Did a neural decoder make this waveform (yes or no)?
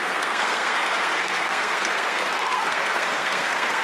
yes